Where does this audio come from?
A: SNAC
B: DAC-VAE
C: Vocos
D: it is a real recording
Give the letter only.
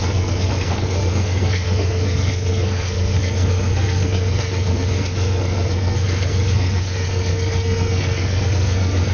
A